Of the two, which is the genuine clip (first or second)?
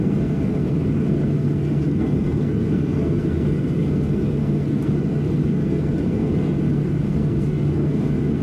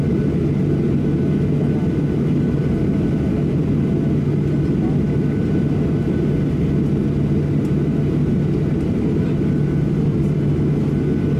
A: second